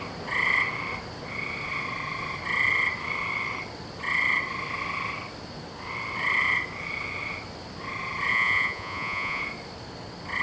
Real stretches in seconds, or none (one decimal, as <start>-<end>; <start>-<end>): 0.0-8.3; 9.4-10.4